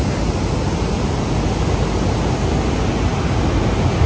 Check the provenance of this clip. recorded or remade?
recorded